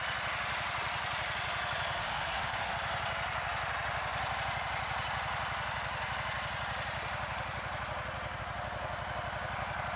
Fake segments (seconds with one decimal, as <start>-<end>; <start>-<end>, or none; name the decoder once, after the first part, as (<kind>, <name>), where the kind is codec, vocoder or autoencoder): 2.0-2.7 (autoencoder, DAC-VAE)